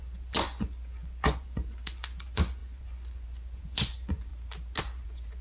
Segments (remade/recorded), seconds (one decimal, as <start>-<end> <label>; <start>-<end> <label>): 0.0-4.3 remade; 4.3-4.8 recorded; 4.8-5.4 remade

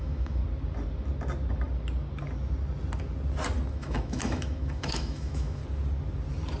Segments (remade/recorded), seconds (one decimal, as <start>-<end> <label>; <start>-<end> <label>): 0.0-0.4 remade; 0.4-3.7 recorded; 3.7-5.6 remade; 5.6-6.6 recorded

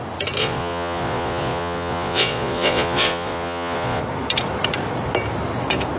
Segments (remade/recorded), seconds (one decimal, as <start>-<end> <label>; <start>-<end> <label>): 0.0-0.4 recorded; 0.4-4.0 remade; 4.0-6.0 recorded